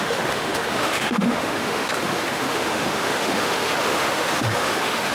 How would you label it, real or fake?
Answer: fake